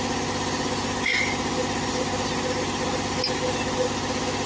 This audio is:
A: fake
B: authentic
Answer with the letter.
B